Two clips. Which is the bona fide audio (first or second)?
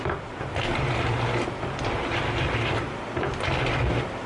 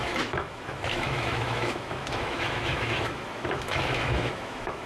first